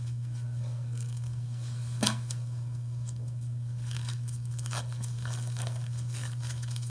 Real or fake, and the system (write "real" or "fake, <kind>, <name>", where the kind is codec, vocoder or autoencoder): fake, codec, SNAC